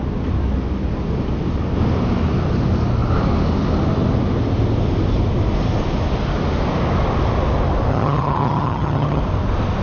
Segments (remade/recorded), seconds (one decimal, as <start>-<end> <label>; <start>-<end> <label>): 0.0-7.9 recorded; 7.9-9.2 remade; 9.2-9.8 recorded